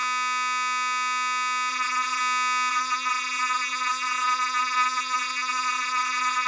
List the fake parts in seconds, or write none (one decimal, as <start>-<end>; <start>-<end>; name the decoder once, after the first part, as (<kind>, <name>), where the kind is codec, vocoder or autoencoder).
1.7-2.2 (vocoder, Vocos); 2.7-6.5